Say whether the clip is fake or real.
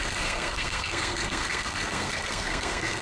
fake